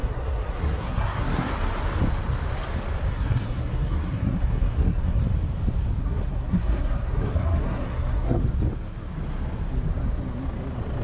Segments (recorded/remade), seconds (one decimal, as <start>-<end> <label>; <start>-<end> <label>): 0.0-1.5 remade; 1.5-3.1 recorded; 3.1-5.2 remade; 5.2-6.0 recorded; 6.0-8.4 remade; 8.4-11.0 recorded